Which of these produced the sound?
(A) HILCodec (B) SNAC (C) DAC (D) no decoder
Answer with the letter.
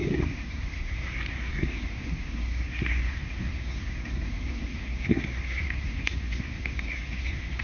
B